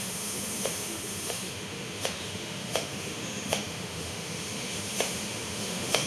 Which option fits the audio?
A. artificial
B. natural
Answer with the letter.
A